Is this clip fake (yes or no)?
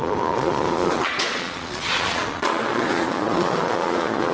yes